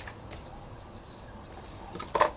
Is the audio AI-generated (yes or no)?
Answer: yes